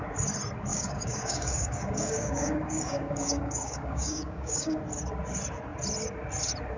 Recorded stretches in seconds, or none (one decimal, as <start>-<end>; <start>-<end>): 0.0-0.7; 4.8-6.8